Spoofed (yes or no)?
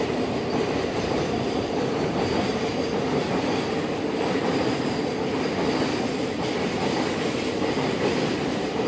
yes